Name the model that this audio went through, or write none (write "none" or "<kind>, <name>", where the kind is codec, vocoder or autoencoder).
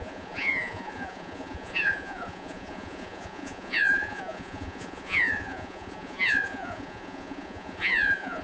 vocoder, Vocos